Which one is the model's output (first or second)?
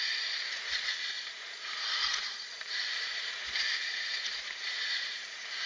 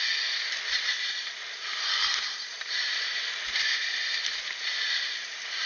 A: first